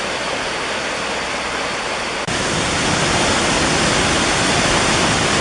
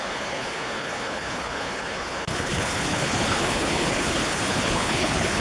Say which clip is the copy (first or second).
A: second